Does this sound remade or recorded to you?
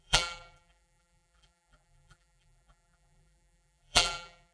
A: remade